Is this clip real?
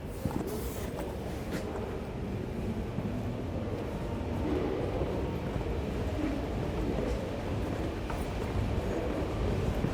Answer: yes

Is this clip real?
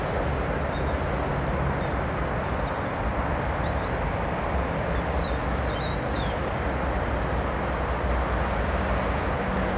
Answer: yes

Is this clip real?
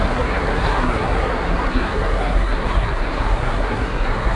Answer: no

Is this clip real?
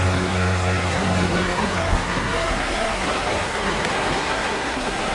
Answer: no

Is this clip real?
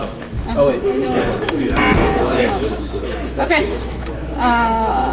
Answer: no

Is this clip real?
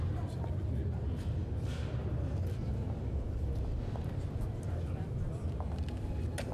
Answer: yes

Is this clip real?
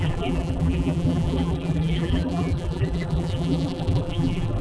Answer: no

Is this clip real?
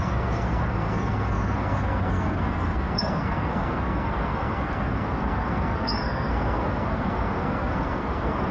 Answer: no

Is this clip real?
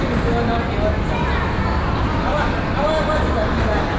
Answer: yes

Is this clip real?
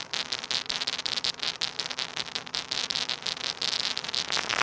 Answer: yes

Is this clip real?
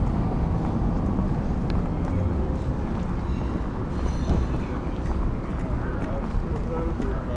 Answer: yes